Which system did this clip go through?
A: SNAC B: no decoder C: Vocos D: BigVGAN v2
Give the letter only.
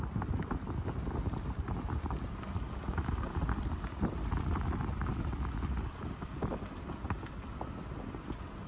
B